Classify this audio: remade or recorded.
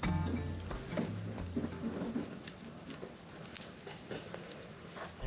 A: recorded